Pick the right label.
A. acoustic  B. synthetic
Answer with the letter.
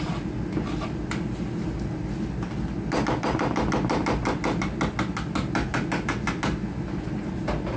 A